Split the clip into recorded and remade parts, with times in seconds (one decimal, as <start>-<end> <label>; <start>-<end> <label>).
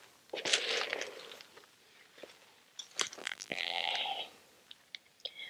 0.0-3.2 recorded; 3.2-3.9 remade; 3.9-5.5 recorded